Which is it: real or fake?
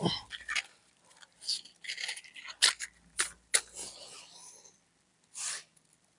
real